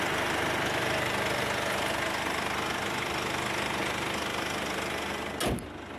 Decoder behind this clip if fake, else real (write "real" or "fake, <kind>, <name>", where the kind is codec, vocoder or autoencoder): real